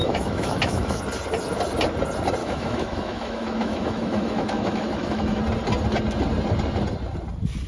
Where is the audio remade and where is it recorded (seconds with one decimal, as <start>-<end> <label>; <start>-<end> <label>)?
0.0-1.0 remade; 1.0-2.4 recorded; 2.4-5.4 remade; 5.4-7.7 recorded